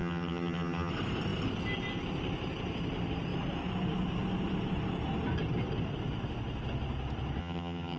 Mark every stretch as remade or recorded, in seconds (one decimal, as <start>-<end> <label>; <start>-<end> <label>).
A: 0.0-0.9 remade; 0.9-7.4 recorded; 7.4-8.0 remade